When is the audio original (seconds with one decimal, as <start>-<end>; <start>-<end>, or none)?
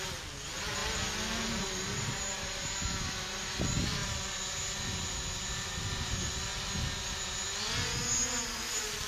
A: 0.0-9.1